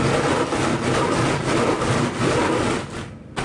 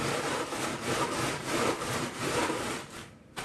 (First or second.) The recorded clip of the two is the first